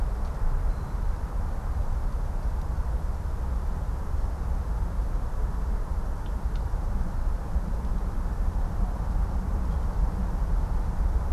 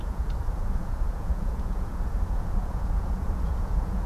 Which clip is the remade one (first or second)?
second